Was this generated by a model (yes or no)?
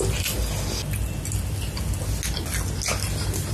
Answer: no